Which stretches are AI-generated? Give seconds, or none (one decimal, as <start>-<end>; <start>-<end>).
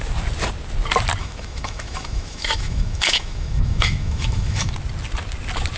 1.2-4.7